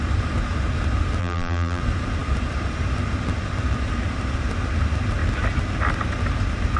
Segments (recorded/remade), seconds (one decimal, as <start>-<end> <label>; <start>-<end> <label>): 0.0-1.2 recorded; 1.2-1.8 remade; 1.8-6.8 recorded

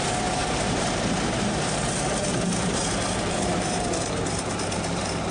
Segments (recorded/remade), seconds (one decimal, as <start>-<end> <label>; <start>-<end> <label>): 0.0-5.3 remade

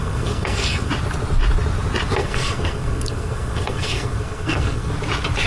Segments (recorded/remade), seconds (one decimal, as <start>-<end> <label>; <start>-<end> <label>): 0.0-0.9 remade; 0.9-2.2 recorded; 2.2-4.9 remade; 4.9-5.5 recorded

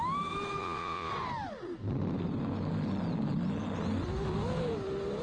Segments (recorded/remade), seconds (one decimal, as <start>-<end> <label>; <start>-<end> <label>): 0.0-0.6 recorded; 0.6-1.1 remade; 1.1-5.2 recorded

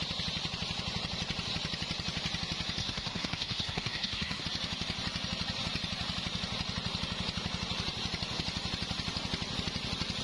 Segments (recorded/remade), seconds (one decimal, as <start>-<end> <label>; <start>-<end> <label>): 0.0-2.8 recorded; 2.8-4.4 remade; 4.4-10.2 recorded

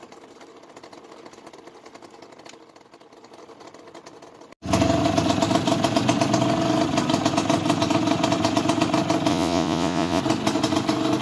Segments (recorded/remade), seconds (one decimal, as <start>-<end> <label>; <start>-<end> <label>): 0.0-9.3 recorded; 9.3-10.2 remade; 10.2-11.2 recorded

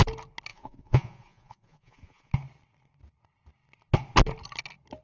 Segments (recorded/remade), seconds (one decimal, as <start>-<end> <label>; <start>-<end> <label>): 0.0-0.5 recorded; 0.5-2.3 remade; 2.3-5.0 recorded